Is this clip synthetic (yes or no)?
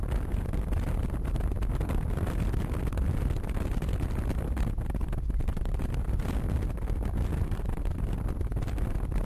no